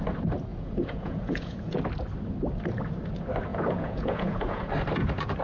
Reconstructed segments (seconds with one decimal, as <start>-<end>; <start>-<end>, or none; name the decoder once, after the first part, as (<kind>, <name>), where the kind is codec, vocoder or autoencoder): 0.5-1.8 (vocoder, Vocos); 3.5-4.7